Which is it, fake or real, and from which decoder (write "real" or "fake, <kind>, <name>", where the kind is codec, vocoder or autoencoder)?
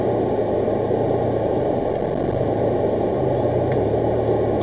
real